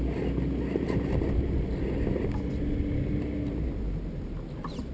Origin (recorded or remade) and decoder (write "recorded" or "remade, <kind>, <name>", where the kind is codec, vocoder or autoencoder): recorded